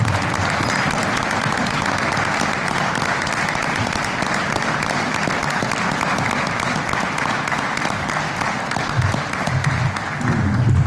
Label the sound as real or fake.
real